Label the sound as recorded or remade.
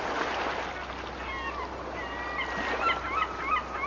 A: recorded